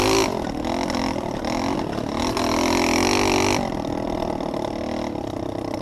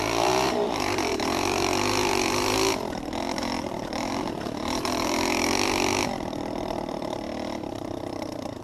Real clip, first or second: first